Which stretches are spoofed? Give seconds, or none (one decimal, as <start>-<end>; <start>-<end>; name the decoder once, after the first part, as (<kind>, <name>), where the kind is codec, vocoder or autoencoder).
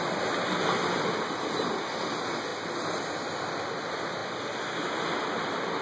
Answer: none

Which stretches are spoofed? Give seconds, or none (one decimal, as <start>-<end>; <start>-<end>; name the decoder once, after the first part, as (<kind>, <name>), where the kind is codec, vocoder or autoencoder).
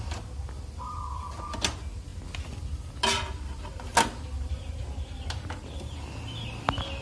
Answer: none